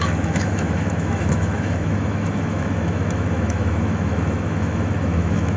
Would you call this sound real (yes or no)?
no